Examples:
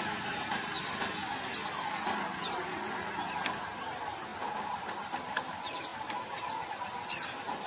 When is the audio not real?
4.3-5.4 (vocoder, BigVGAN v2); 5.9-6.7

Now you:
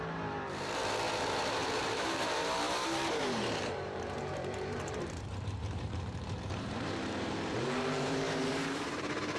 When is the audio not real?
0.0-9.4 (vocoder, BigVGAN v2)